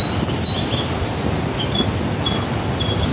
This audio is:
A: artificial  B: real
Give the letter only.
B